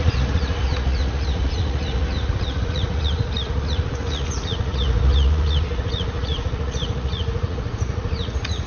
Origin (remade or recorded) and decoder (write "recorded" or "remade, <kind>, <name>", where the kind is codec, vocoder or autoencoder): remade, vocoder, Vocos